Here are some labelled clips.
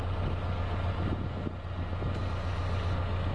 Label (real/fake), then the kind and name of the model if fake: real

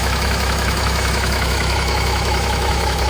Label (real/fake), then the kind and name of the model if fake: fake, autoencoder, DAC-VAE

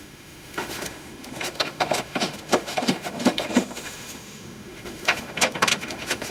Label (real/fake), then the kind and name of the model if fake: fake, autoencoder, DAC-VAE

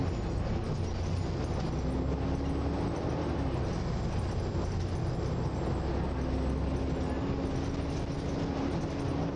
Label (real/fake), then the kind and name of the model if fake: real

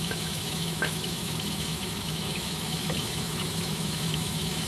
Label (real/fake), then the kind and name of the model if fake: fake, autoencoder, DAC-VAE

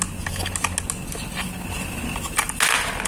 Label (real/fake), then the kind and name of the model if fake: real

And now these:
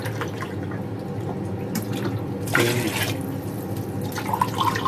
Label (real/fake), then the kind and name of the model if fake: real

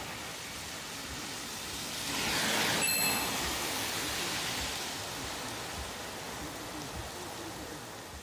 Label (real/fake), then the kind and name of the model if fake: real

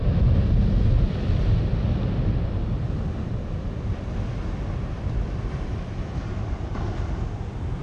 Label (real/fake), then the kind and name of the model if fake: real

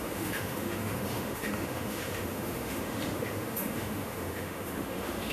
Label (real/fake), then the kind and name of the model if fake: fake, autoencoder, DAC-VAE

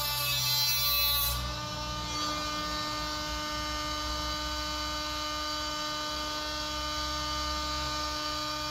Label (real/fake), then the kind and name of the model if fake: real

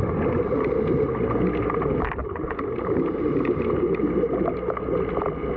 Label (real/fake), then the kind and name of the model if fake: real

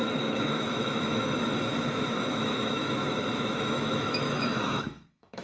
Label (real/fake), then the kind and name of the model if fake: fake, autoencoder, DAC-VAE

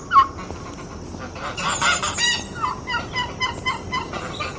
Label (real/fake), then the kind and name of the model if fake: real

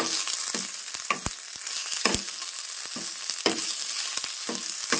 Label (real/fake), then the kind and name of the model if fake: real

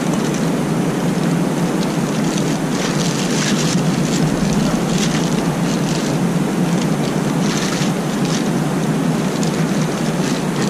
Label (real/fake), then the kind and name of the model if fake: real